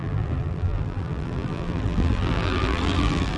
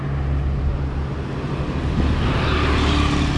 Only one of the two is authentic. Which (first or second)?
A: second